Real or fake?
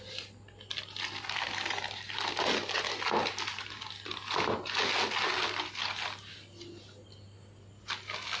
real